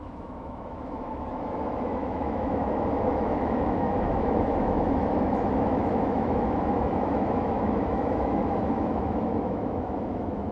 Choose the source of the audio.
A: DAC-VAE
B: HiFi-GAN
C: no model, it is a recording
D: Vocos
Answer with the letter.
A